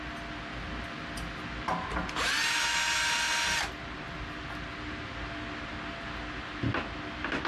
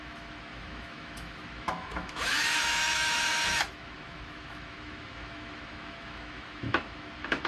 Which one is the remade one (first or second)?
second